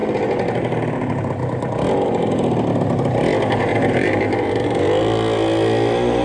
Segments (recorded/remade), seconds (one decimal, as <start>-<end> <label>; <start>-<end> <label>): 0.0-3.7 recorded; 3.7-4.9 remade; 4.9-6.2 recorded